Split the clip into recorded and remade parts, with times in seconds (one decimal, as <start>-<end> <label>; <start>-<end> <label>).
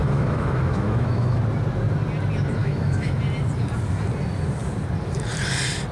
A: 0.0-1.4 remade; 1.4-2.6 recorded; 2.6-3.2 remade; 3.2-5.9 recorded